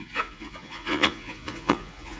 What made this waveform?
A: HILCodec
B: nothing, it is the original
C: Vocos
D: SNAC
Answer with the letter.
C